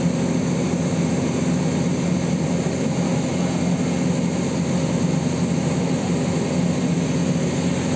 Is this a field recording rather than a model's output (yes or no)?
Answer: yes